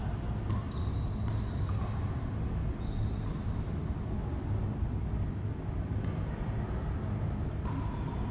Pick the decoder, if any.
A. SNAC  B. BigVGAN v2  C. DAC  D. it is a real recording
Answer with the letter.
D